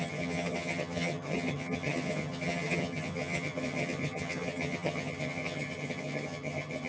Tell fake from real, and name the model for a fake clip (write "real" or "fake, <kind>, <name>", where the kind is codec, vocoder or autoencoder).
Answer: fake, vocoder, HiFi-GAN